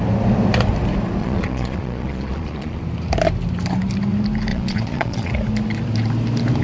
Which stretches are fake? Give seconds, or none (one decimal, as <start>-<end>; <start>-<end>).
1.2-2.8; 4.5-5.3